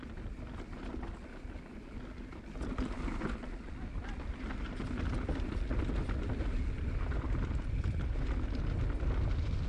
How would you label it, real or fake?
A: real